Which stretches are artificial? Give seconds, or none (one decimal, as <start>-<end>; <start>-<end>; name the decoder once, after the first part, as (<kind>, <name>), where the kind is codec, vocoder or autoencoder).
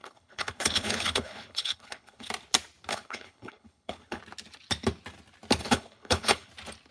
0.0-2.3 (codec, HILCodec); 2.9-4.2; 5.6-6.5